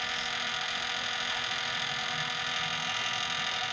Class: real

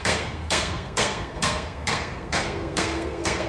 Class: fake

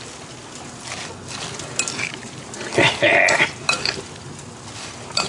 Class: real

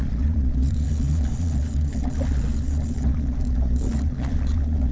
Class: fake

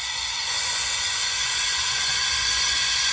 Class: fake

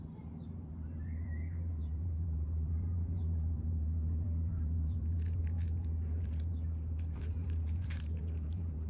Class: fake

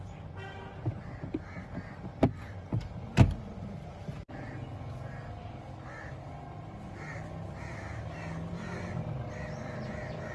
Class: real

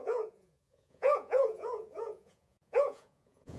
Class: fake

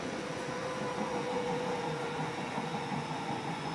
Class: fake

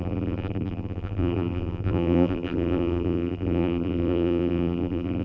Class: fake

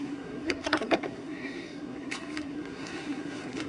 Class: fake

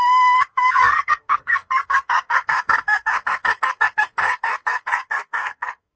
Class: fake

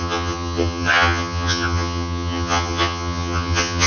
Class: fake